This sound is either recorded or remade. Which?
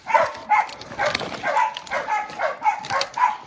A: recorded